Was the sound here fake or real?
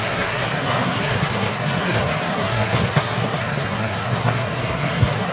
fake